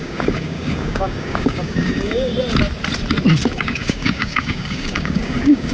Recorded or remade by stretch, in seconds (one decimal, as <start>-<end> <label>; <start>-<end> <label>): 0.0-2.3 remade; 2.3-3.5 recorded; 3.5-5.7 remade